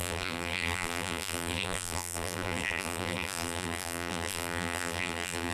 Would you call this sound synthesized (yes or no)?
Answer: yes